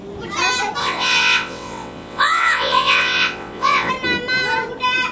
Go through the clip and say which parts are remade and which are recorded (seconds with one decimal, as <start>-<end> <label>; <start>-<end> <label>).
0.0-0.8 recorded; 0.8-3.9 remade; 3.9-5.1 recorded